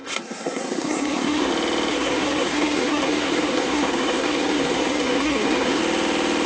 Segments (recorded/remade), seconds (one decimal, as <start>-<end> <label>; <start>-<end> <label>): 0.0-1.5 remade; 1.5-1.9 recorded; 1.9-5.8 remade; 5.8-6.5 recorded